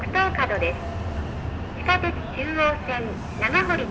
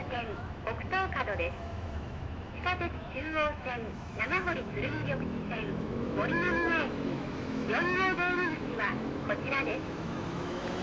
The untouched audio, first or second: first